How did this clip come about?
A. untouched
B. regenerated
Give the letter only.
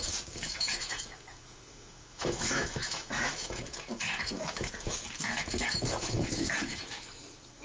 B